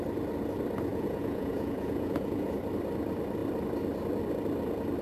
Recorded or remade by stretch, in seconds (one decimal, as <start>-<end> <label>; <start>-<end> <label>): 0.0-0.9 recorded; 0.9-2.6 remade; 2.6-5.0 recorded